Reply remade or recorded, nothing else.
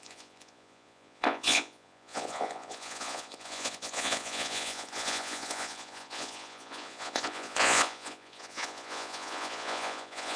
remade